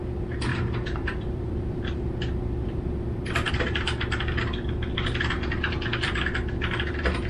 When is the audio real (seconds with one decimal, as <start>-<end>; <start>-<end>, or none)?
0.0-0.5; 3.5-7.3